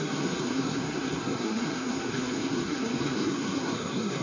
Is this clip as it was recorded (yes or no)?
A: no